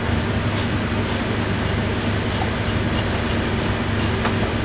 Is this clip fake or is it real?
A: real